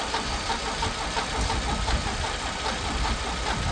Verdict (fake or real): real